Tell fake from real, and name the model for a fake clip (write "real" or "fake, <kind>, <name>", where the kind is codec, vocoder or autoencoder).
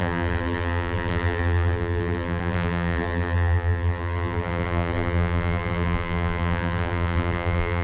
fake, vocoder, BigVGAN v2